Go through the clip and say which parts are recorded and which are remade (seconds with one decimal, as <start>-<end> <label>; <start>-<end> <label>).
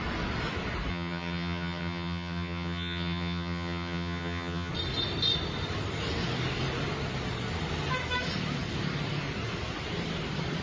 0.0-0.9 recorded; 0.9-4.7 remade; 4.7-10.6 recorded